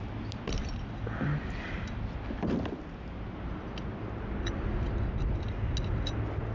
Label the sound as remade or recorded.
recorded